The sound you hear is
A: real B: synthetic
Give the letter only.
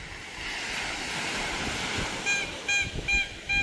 A